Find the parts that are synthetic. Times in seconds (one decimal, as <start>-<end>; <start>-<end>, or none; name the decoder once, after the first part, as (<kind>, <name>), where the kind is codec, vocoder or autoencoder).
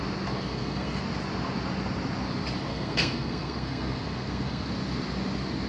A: 0.5-1.0 (codec, SNAC); 2.7-4.7